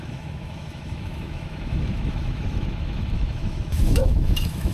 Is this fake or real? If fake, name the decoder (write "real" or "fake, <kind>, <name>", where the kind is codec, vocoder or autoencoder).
fake, autoencoder, DAC-VAE